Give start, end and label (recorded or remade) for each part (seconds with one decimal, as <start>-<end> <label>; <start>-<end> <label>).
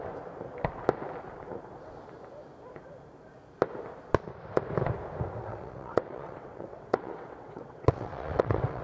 0.0-5.4 recorded; 5.4-8.8 remade